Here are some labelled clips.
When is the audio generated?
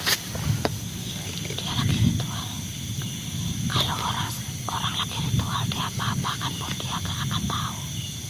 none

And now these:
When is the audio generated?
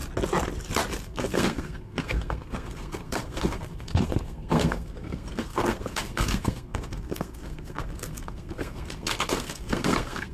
1.0-10.3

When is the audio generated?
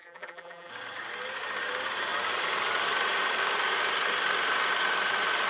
0.0-0.7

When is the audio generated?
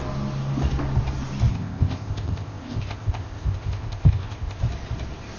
1.5-4.6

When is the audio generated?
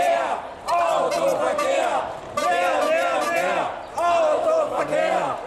4.3-4.8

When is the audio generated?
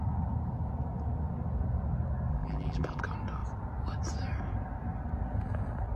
2.3-3.0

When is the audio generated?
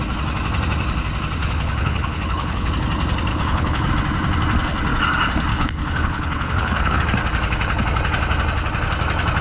1.4-2.7; 3.3-3.9; 5.5-7.0